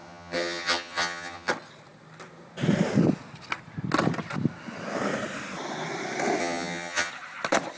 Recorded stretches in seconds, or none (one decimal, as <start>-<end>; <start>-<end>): 1.5-6.4; 7.1-7.8